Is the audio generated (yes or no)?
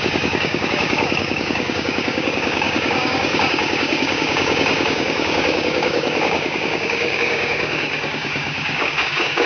yes